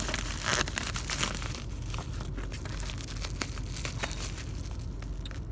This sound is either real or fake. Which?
real